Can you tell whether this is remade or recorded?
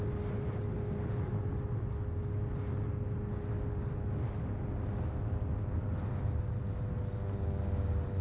recorded